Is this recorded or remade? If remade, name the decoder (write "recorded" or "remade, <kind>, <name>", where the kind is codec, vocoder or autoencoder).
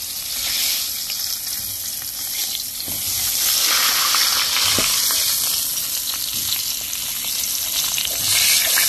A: recorded